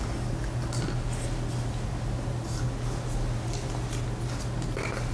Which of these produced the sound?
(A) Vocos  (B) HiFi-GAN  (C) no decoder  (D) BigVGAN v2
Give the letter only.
C